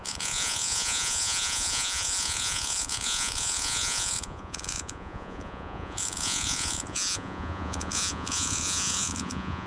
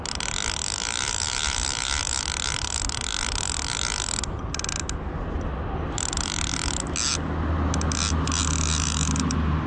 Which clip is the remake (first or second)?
first